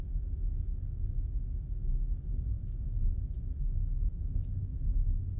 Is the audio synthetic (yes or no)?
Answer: yes